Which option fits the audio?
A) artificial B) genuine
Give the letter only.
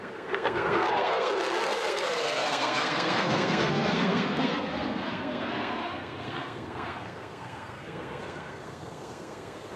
A